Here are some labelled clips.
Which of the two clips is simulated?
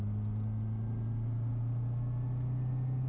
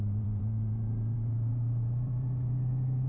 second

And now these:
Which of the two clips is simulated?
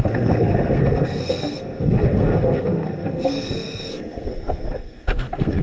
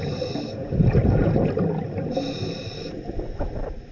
first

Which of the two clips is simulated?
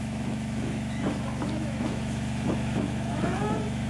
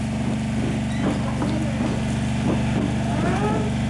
first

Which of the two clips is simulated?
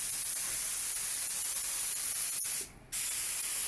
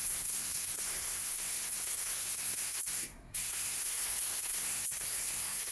second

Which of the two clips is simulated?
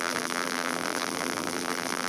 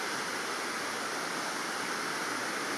first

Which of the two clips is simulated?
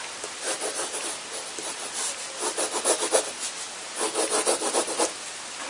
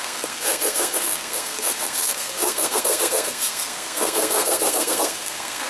second